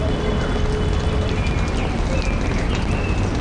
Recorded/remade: recorded